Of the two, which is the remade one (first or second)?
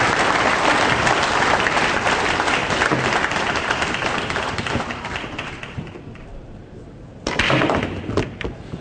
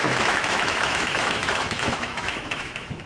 second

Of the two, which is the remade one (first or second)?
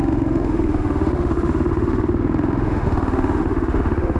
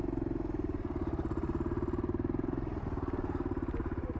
first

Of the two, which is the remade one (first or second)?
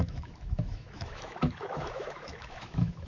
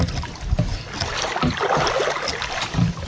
first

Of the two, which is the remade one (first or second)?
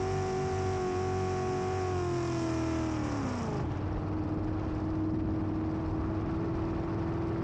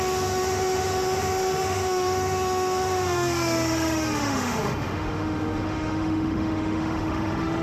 second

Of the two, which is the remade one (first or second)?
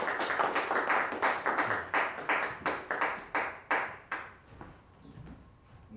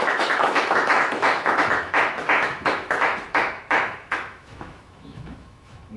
second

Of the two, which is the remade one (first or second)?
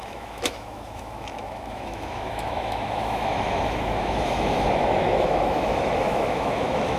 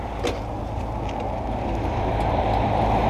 first